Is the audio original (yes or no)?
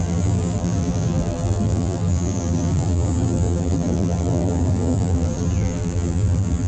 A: no